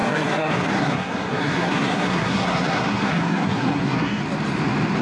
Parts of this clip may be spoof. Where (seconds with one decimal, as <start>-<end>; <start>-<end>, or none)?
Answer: 0.0-4.2